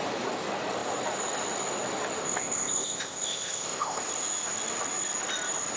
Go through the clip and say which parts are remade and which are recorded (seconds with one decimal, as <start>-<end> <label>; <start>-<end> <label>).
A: 0.0-2.2 recorded; 2.2-4.0 remade; 4.0-5.8 recorded